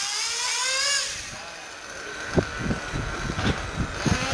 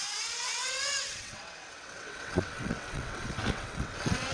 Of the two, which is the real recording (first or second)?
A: first